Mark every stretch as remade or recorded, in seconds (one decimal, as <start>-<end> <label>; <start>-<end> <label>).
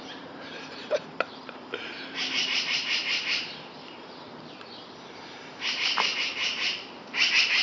0.0-6.1 remade; 6.1-7.1 recorded; 7.1-7.6 remade